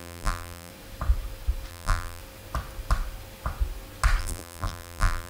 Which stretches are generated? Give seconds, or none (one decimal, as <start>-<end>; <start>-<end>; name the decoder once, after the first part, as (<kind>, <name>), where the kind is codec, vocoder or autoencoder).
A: 0.0-0.7 (vocoder, BigVGAN v2); 1.7-2.2; 4.2-5.3